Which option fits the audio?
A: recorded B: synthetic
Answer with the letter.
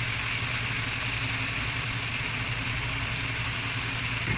A